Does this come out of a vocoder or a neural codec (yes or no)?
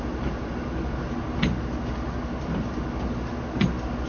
no